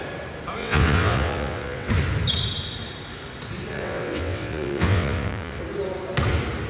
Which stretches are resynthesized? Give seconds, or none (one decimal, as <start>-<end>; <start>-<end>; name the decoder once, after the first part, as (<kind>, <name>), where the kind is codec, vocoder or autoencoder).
0.6-1.9 (vocoder, WaveNeXt); 3.7-5.6